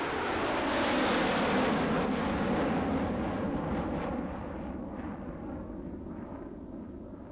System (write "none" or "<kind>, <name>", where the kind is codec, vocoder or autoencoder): none